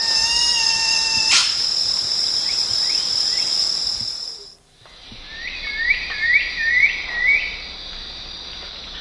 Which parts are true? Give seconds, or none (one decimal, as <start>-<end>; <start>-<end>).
0.0-9.0